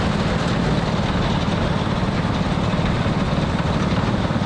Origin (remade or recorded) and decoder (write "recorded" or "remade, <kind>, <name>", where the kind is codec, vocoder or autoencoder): recorded